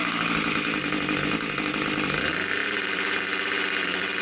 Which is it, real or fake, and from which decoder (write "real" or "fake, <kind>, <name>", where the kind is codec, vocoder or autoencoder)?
real